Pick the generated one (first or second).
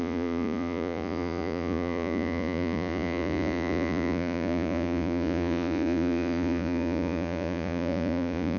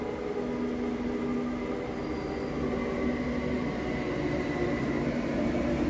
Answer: first